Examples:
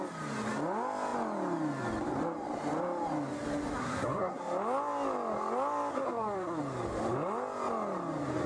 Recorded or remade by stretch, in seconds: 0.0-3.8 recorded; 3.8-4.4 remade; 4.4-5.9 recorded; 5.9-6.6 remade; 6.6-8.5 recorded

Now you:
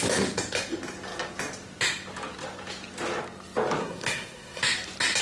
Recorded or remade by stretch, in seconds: 0.0-3.8 recorded; 3.8-4.6 remade; 4.6-5.2 recorded

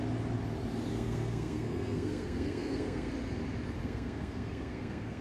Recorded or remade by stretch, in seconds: 0.0-0.9 recorded; 0.9-3.1 remade; 3.1-3.8 recorded; 3.8-5.2 remade

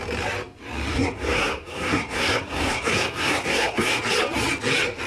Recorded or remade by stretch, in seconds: 0.0-0.9 recorded; 0.9-4.0 remade; 4.0-5.1 recorded

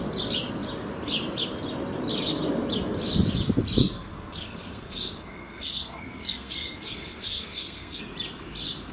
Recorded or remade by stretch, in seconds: 0.0-3.8 recorded; 3.8-8.0 remade; 8.0-8.9 recorded

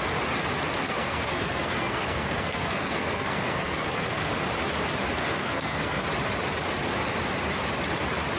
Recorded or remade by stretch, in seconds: 0.0-0.8 recorded; 0.8-4.3 remade; 4.3-5.2 recorded; 5.2-6.0 remade; 6.0-8.4 recorded